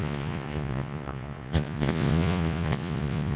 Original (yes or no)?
no